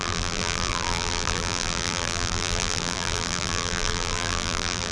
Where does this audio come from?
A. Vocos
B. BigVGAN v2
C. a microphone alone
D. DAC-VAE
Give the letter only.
B